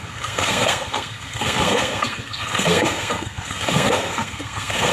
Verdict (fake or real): fake